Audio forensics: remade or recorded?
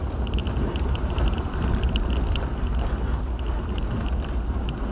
remade